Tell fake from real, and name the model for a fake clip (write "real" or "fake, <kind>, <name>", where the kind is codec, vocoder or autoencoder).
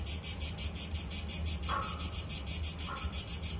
real